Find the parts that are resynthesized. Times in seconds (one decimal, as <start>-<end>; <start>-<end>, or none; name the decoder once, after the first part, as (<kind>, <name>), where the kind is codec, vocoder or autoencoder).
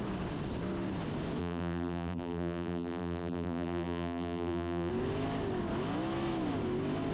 1.4-4.9 (vocoder, BigVGAN v2)